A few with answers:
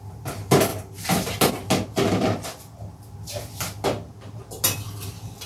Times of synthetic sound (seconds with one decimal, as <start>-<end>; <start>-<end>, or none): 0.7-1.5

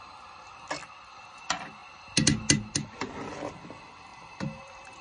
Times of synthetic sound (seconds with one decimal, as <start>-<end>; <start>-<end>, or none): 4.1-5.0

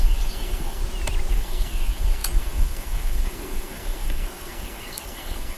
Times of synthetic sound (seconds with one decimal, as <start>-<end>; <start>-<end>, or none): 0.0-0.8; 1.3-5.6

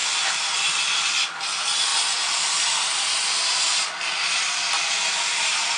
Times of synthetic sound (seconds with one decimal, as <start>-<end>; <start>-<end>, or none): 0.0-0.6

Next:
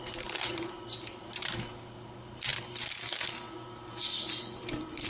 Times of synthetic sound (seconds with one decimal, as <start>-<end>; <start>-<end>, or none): 0.0-2.5; 4.3-5.1

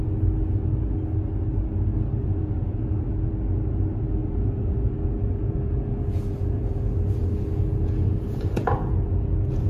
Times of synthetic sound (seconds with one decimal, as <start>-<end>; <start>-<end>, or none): 2.2-3.3; 4.2-9.7